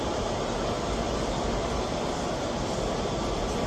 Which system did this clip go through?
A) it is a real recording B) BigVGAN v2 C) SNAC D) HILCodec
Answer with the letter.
A